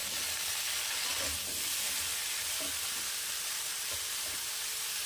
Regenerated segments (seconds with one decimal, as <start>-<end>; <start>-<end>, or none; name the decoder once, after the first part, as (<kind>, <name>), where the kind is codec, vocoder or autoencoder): 1.5-2.1 (vocoder, BigVGAN v2); 2.9-5.1